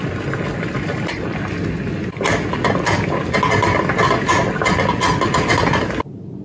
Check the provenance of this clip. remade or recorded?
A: recorded